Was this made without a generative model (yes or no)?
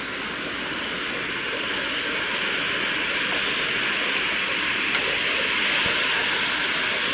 yes